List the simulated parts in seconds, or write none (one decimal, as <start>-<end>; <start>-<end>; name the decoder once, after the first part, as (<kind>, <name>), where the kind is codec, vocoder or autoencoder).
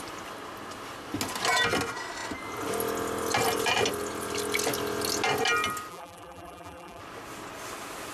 5.9-7.0 (vocoder, BigVGAN v2)